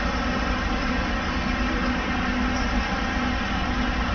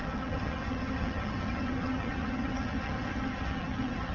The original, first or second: first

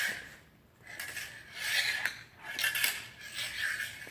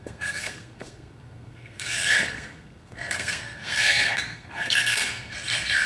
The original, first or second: first